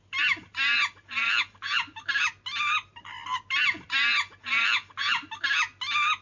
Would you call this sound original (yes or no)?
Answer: yes